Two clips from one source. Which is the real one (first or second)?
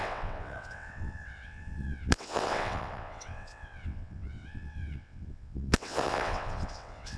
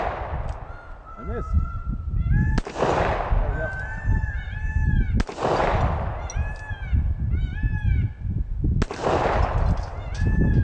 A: second